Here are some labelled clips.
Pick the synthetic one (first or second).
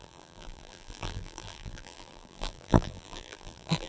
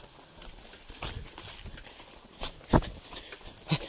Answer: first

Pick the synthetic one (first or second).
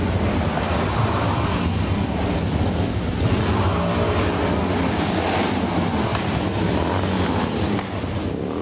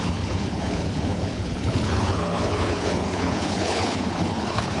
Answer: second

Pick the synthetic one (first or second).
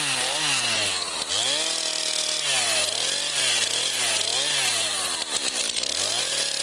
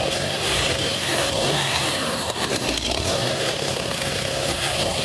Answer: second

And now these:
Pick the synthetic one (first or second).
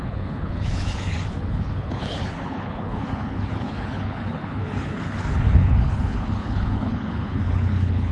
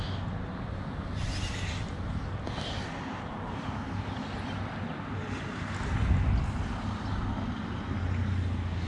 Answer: first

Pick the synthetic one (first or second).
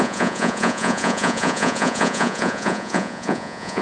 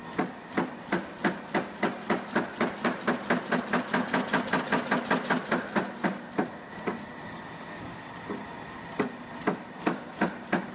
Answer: first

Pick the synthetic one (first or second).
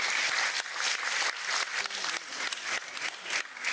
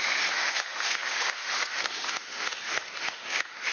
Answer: second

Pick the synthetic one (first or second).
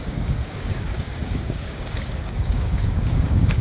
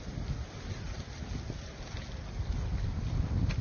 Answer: first